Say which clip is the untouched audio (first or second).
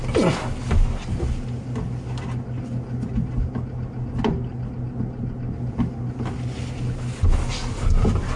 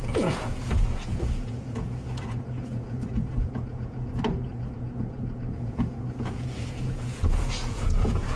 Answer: first